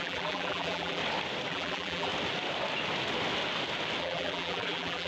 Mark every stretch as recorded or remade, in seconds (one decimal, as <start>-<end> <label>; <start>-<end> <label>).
0.0-1.0 remade; 1.0-1.5 recorded; 1.5-2.1 remade; 2.1-4.0 recorded; 4.0-5.1 remade